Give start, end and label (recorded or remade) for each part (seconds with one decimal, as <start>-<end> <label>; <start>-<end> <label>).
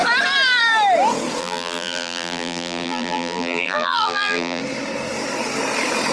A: 0.0-1.4 recorded; 1.4-4.6 remade; 4.6-6.1 recorded